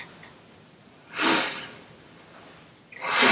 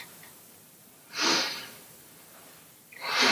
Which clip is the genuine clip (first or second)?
first